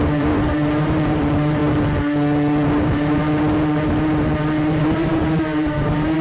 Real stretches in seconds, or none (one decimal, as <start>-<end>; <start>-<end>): 1.6-2.7; 3.2-4.8